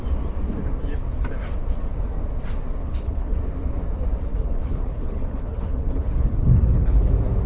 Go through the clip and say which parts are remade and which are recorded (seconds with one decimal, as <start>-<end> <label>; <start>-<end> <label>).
0.0-2.8 recorded; 2.8-3.4 remade; 3.4-4.3 recorded; 4.3-7.1 remade; 7.1-7.5 recorded